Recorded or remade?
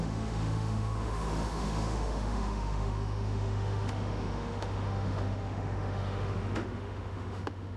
remade